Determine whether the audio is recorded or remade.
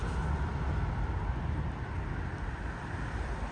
recorded